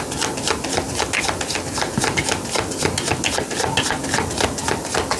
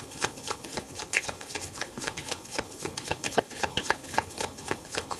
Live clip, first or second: first